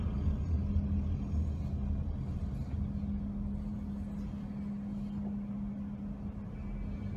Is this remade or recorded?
recorded